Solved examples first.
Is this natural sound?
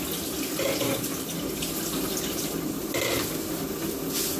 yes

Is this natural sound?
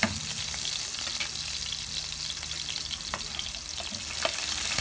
yes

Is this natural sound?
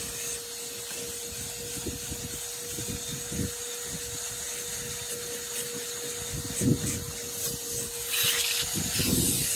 yes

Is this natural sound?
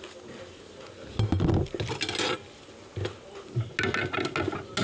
yes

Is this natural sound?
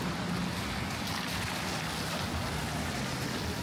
yes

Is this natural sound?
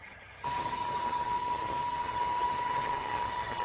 no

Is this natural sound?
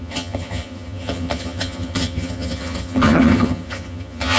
no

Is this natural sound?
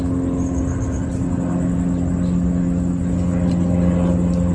yes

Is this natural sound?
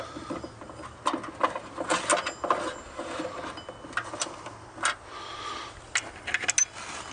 yes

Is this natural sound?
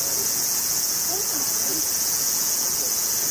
no